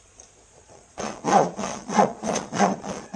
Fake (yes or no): yes